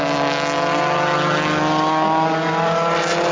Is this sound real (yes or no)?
yes